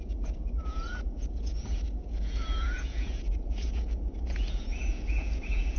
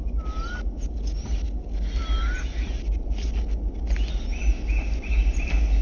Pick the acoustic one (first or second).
second